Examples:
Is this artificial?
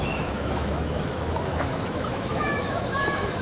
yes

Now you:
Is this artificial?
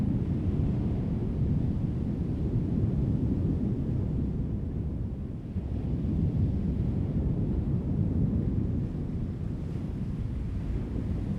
no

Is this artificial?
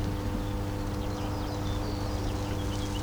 no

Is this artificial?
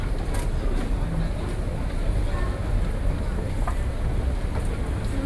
no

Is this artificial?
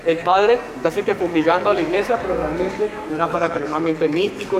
yes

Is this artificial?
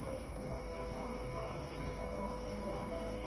yes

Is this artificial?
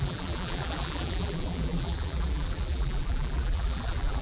yes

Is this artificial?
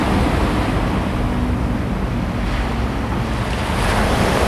no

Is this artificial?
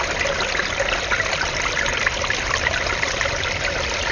no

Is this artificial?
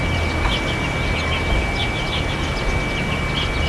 no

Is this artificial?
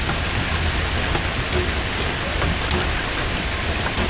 no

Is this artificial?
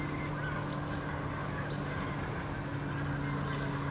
no